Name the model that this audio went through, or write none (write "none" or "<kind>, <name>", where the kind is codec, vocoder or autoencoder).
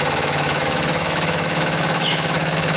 autoencoder, DAC-VAE